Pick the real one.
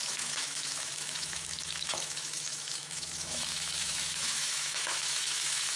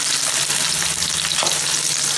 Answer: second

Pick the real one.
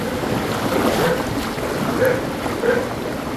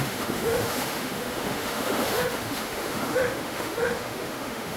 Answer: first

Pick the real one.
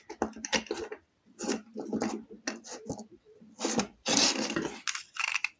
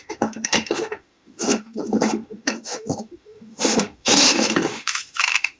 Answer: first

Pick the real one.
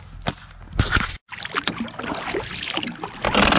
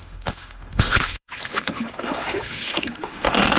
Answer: first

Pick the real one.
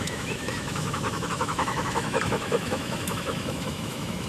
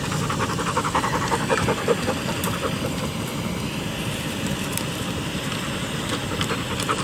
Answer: second